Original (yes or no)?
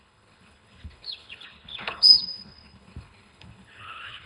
no